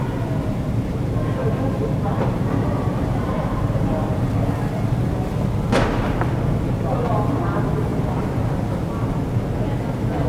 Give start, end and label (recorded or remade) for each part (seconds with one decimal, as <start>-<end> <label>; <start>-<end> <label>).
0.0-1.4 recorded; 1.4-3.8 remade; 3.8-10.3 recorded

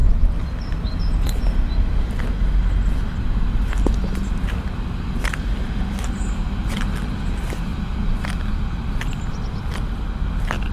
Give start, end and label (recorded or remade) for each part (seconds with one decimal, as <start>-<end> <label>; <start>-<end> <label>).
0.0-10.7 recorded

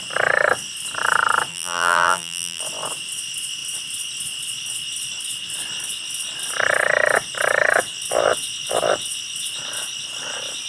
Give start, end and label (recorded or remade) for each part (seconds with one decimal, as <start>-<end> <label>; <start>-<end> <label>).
0.0-1.5 recorded; 1.5-2.6 remade; 2.6-10.7 recorded

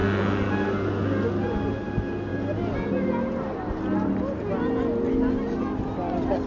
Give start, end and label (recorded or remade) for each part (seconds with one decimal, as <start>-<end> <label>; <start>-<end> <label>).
0.0-6.5 recorded

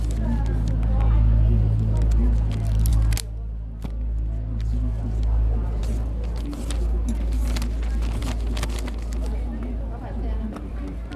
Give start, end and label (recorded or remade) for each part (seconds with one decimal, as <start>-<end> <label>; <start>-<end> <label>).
0.0-11.2 recorded

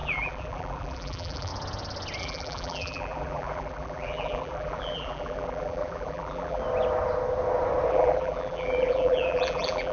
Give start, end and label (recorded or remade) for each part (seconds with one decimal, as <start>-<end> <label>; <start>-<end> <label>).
0.0-1.5 remade; 1.5-2.2 recorded; 2.2-6.6 remade; 6.6-7.9 recorded; 7.9-9.9 remade

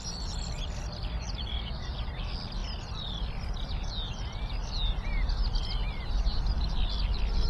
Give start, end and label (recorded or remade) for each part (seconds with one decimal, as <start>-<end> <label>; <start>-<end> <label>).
0.0-5.6 recorded; 5.6-6.5 remade; 6.5-7.5 recorded